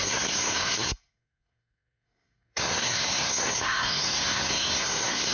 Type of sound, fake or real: fake